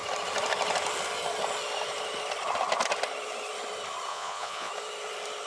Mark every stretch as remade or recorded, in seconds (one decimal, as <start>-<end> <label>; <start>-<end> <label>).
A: 0.0-4.1 recorded; 4.1-4.7 remade; 4.7-5.5 recorded